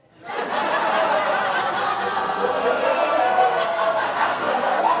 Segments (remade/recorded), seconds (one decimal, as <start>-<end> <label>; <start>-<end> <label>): 0.0-1.9 recorded; 1.9-5.0 remade